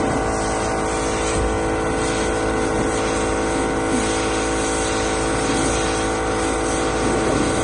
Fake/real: real